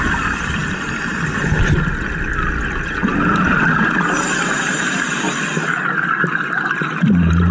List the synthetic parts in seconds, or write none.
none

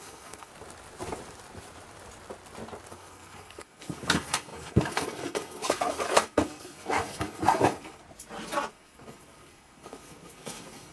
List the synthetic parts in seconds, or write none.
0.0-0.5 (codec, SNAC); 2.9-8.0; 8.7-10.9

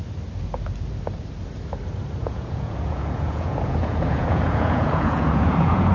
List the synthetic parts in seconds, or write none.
2.2-5.9 (vocoder, Vocos)

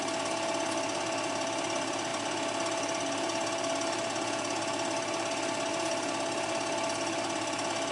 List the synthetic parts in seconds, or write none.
none

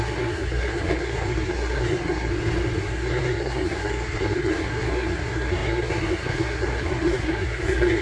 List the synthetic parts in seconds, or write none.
0.0-2.3 (codec, SNAC); 2.8-8.0

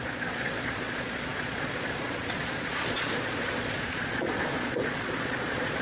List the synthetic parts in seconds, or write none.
0.0-5.8 (vocoder, Vocos)